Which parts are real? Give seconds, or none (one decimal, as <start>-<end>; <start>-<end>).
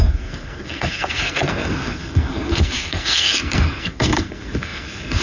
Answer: none